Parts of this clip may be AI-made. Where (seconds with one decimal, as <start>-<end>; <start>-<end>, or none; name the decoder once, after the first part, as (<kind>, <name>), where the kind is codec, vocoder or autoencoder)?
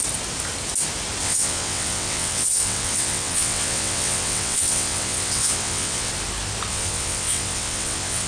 1.2-6.1 (vocoder, WaveNeXt); 6.7-8.3